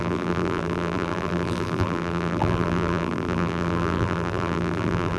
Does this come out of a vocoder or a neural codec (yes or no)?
yes